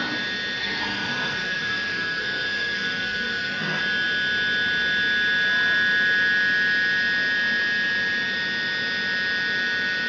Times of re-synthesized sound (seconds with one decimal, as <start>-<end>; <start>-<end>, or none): 0.6-3.8